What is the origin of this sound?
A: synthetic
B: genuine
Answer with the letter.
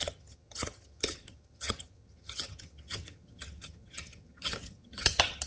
A